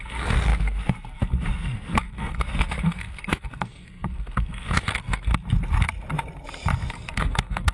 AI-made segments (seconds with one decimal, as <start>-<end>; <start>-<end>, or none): 0.0-5.3; 6.9-7.7